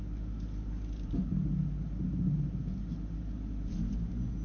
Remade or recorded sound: recorded